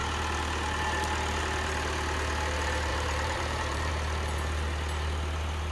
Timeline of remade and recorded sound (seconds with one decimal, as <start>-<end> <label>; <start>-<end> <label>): 0.0-2.9 recorded; 2.9-3.9 remade; 3.9-5.7 recorded